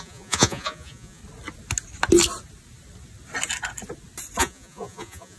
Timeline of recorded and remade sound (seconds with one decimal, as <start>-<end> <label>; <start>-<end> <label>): 0.0-1.2 remade; 1.2-4.4 recorded; 4.4-5.4 remade